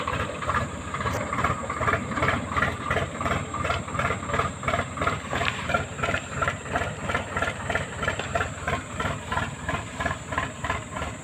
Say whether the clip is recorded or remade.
remade